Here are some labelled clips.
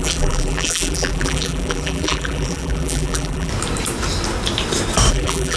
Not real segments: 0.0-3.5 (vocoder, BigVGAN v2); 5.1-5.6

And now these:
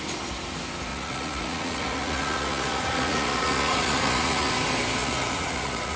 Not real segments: 0.9-4.5 (vocoder, Vocos); 5.0-6.0

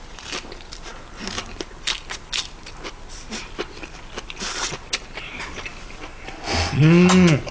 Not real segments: none

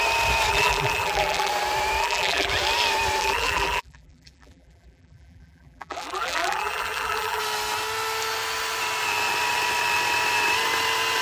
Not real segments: 0.5-1.5 (vocoder, BigVGAN v2); 2.0-2.5; 3.2-7.4